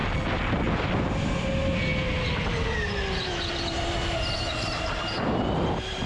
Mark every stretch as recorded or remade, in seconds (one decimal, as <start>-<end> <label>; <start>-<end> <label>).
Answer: 0.0-6.1 recorded